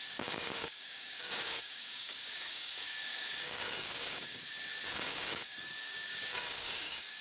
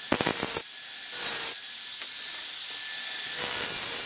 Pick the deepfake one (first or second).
first